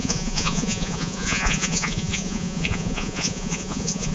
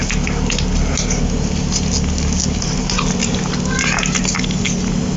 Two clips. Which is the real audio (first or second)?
second